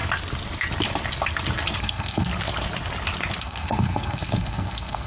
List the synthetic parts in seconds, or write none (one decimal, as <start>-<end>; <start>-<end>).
1.8-2.3; 3.4-5.1